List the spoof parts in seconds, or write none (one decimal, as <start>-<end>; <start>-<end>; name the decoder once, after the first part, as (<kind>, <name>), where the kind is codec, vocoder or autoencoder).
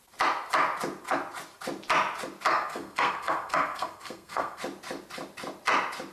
2.5-4.6 (codec, SNAC)